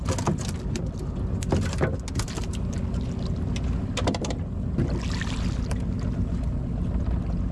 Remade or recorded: recorded